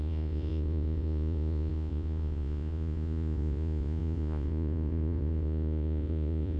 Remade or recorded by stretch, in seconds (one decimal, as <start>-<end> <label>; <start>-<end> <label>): 0.0-6.6 remade